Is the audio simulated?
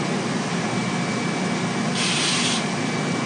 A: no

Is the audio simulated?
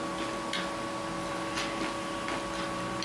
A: no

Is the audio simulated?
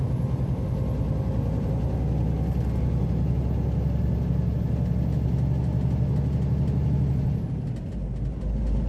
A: no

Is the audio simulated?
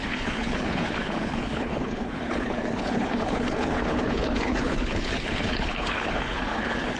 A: yes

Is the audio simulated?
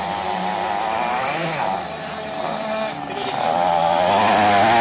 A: no